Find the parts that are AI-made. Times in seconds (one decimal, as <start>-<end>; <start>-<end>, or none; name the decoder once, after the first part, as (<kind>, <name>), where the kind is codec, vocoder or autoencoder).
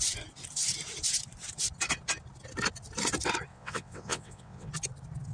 3.5-4.7 (vocoder, WaveNeXt)